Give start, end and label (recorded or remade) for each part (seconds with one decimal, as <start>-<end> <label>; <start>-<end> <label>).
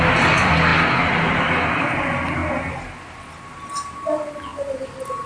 0.0-5.3 recorded